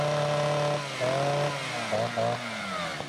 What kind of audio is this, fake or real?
real